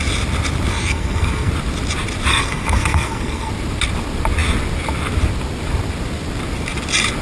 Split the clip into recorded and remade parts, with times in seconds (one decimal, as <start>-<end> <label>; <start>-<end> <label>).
0.0-0.7 recorded; 0.7-1.5 remade; 1.5-2.3 recorded; 2.3-3.5 remade; 3.5-7.2 recorded